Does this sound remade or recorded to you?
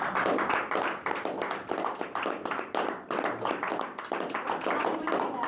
recorded